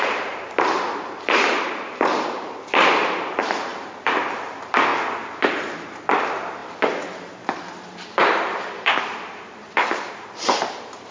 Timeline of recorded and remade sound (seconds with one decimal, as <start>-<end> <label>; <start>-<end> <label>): 0.0-2.8 remade; 2.8-3.3 recorded; 3.3-3.7 remade; 3.7-4.2 recorded; 4.2-6.6 remade; 6.6-9.0 recorded; 9.0-11.1 remade